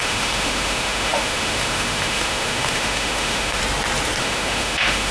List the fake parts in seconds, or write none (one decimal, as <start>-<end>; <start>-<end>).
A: 0.0-3.6; 4.2-5.1